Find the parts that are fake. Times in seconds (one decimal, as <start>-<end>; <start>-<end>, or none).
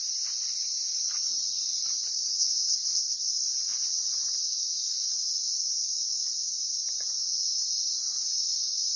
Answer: 2.4-3.3